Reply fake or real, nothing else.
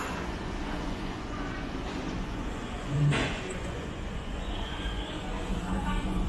fake